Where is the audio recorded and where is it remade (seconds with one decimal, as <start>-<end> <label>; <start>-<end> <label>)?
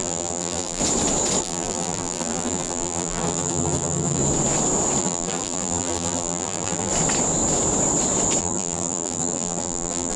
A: 0.0-0.8 remade; 0.8-1.4 recorded; 1.4-4.2 remade; 4.2-5.0 recorded; 5.0-6.9 remade; 6.9-8.4 recorded; 8.4-10.2 remade